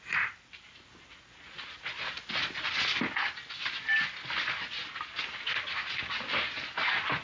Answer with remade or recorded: recorded